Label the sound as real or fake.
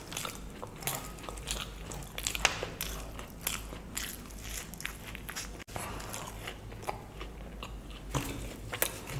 real